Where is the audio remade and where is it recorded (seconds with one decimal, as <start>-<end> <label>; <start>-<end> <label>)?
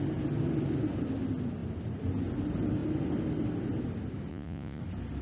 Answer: 0.0-4.3 recorded; 4.3-4.8 remade; 4.8-5.2 recorded